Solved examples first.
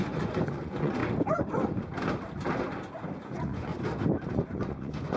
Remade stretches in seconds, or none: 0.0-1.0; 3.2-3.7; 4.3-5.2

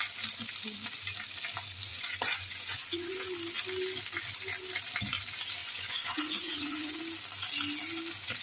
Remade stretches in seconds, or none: 1.9-3.3; 5.6-7.0

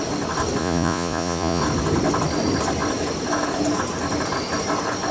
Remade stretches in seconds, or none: 0.6-1.6

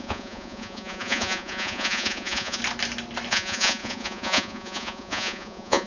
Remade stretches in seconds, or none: 0.0-2.6; 3.3-5.9

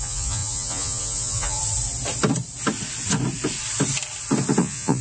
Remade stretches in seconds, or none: 0.0-1.6; 4.6-5.0

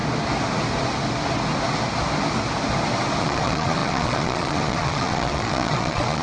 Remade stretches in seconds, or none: 3.2-6.2

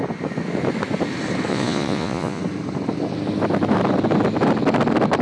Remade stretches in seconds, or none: 1.5-2.4